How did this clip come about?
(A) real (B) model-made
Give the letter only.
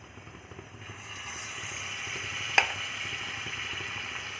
A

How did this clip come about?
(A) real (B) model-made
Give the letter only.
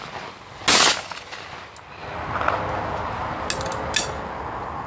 A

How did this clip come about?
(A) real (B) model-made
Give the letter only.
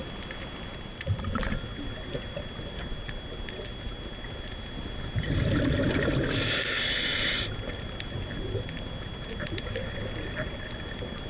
A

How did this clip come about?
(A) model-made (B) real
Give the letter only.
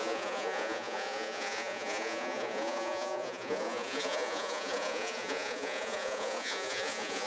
A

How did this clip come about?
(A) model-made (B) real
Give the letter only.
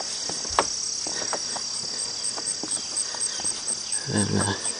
B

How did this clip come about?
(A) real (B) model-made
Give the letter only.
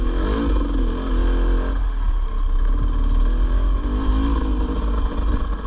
A